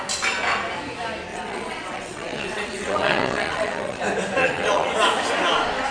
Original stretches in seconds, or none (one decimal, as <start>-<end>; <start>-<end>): 0.0-1.3; 4.0-4.4; 4.9-5.9